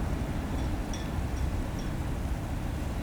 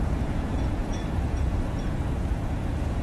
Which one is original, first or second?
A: first